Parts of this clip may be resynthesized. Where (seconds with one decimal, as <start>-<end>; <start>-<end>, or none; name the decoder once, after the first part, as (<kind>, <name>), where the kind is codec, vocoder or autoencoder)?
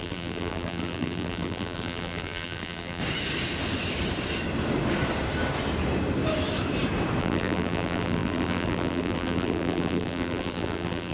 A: 0.0-3.0 (vocoder, BigVGAN v2); 7.2-11.1